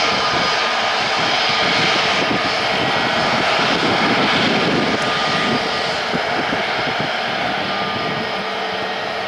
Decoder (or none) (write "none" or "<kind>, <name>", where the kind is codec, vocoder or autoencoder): none